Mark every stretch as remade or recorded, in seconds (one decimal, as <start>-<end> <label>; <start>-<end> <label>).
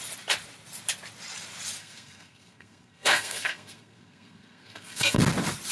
0.0-1.8 recorded; 1.8-5.2 remade; 5.2-5.7 recorded